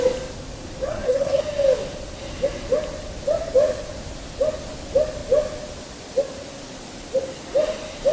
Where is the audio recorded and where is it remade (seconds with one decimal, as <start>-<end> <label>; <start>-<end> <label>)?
0.0-0.9 recorded; 0.9-1.4 remade; 1.4-8.1 recorded